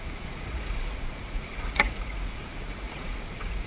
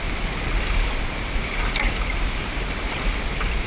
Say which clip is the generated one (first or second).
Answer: first